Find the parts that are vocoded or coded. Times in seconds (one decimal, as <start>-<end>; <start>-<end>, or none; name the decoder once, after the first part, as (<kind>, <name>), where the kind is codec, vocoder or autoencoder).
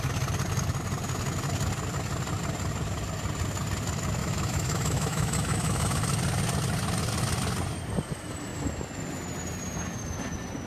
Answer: 4.2-6.0 (autoencoder, DAC-VAE)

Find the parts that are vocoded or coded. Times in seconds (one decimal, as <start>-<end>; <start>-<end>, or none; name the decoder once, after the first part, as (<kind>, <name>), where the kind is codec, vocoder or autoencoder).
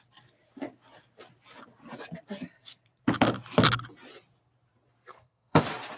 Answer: 5.0-5.6 (codec, SNAC)